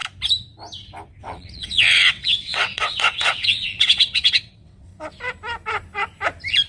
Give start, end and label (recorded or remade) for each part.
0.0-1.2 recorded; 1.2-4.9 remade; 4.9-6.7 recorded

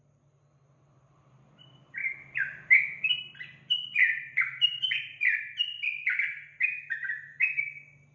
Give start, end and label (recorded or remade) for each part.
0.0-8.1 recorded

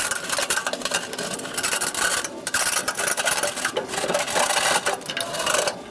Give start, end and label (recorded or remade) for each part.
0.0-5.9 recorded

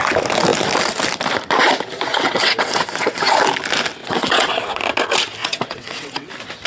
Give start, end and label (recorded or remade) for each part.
0.0-2.1 recorded; 2.1-3.4 remade; 3.4-4.0 recorded; 4.0-4.8 remade; 4.8-5.4 recorded; 5.4-6.3 remade; 6.3-6.7 recorded